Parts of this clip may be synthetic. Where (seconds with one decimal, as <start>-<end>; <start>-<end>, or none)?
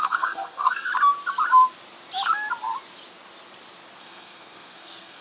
0.0-0.9; 4.0-5.2